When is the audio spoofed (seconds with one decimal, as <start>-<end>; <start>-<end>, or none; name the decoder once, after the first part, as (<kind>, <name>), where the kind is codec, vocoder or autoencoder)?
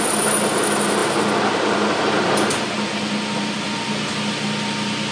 none